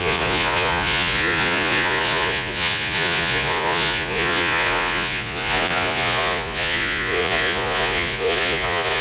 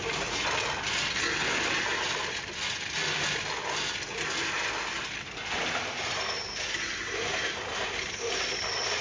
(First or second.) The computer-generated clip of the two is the first